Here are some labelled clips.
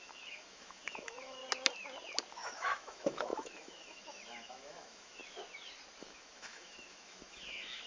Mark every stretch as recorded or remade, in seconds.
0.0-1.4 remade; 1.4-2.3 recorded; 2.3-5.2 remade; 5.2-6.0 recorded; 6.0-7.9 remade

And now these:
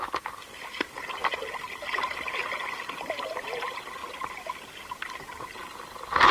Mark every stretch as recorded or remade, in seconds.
0.0-6.3 recorded

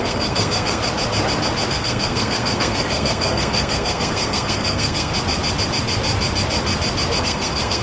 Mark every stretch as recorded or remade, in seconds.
0.0-0.8 remade; 0.8-1.7 recorded; 1.7-5.1 remade; 5.1-7.2 recorded; 7.2-7.8 remade

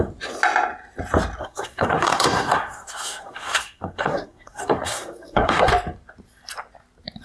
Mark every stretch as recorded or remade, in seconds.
0.0-1.4 recorded; 1.4-5.7 remade; 5.7-7.2 recorded

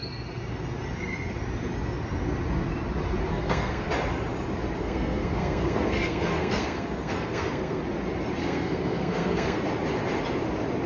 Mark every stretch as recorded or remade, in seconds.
0.0-3.3 recorded; 3.3-3.9 remade; 3.9-4.8 recorded; 4.8-7.8 remade; 7.8-8.4 recorded; 8.4-9.6 remade; 9.6-10.9 recorded

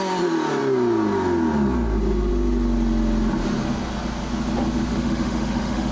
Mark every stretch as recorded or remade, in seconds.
0.0-4.9 recorded; 4.9-5.9 remade

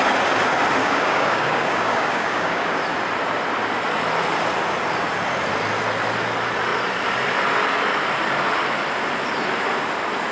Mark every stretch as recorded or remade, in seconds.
0.0-0.8 recorded; 0.8-2.8 remade; 2.8-10.3 recorded

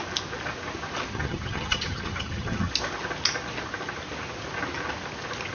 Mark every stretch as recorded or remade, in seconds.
0.0-1.1 recorded; 1.1-2.7 remade; 2.7-5.5 recorded